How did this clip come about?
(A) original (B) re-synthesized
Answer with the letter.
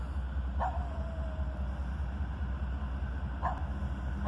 A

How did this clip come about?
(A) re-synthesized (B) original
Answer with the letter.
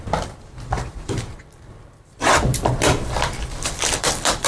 A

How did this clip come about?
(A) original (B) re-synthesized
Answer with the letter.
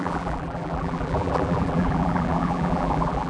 B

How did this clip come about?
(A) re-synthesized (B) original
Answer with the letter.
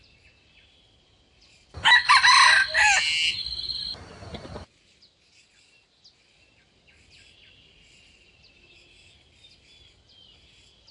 B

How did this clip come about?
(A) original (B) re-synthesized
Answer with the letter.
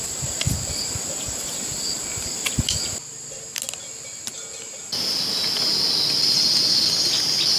A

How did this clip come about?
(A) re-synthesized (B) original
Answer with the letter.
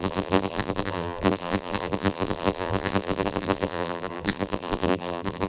A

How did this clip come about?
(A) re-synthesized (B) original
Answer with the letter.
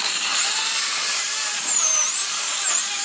A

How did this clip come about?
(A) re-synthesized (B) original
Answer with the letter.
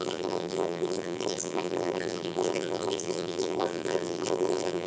A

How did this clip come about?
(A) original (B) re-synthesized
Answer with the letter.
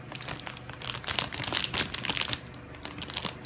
A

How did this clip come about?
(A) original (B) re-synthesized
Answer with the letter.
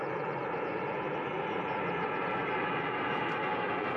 B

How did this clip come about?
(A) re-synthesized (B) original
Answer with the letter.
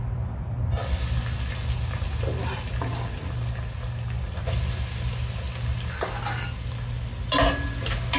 B